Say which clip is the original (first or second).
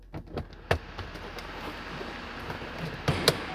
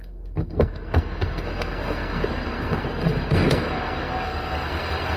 first